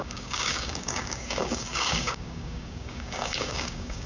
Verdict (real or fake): fake